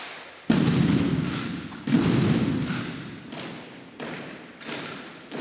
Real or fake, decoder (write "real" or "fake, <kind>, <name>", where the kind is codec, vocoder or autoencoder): real